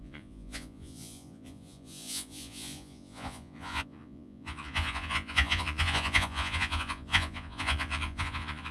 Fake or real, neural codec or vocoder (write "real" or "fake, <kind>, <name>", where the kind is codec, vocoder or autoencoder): fake, vocoder, Vocos